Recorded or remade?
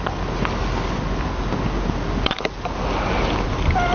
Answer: recorded